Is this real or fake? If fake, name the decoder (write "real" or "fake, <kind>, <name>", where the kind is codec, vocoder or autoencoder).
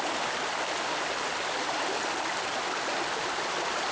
real